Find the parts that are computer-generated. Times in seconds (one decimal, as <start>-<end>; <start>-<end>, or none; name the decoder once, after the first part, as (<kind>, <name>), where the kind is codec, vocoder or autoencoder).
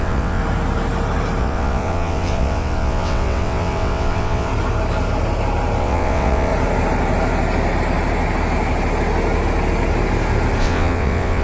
0.0-0.4 (vocoder, WaveNeXt); 1.4-4.5; 5.8-6.5; 10.6-11.4